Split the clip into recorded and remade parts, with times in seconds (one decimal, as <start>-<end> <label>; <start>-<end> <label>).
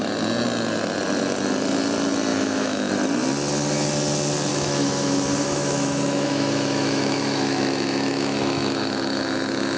0.0-2.3 recorded; 2.3-2.9 remade; 2.9-4.5 recorded; 4.5-9.8 remade